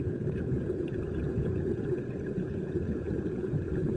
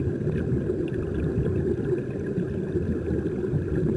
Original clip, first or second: second